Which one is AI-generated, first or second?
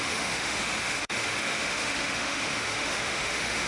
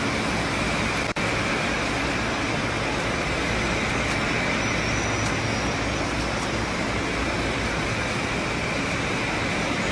first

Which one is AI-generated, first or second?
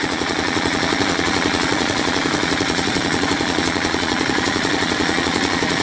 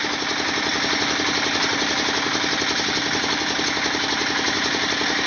first